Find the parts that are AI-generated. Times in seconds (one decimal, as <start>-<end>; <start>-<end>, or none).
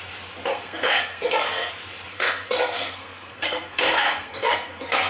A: 0.5-1.7; 2.1-5.1